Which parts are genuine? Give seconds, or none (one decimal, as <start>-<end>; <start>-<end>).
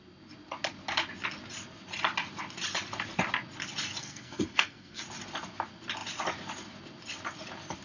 0.0-4.0; 5.0-7.8